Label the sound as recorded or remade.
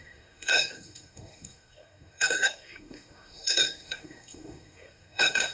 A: remade